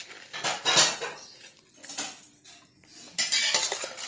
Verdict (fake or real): real